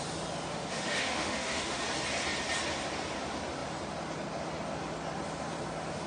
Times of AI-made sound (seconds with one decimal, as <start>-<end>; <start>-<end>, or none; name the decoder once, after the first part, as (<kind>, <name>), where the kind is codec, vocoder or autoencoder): 0.5-1.8 (autoencoder, DAC-VAE)